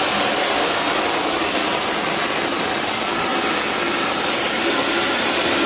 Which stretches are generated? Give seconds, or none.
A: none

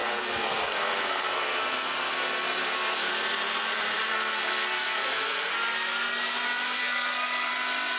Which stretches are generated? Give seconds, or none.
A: 0.0-3.1 (codec, SNAC); 4.1-5.5; 6.8-7.5

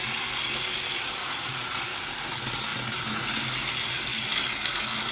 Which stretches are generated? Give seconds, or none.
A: 1.2-1.8 (vocoder, Vocos)

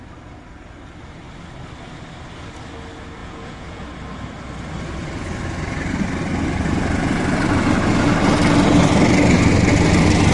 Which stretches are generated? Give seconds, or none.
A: 3.2-3.8 (vocoder, Vocos)

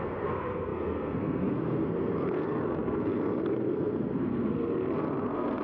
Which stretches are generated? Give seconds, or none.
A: 0.0-5.6 (codec, SNAC)